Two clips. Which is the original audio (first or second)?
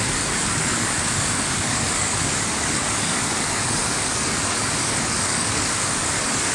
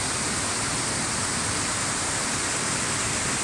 second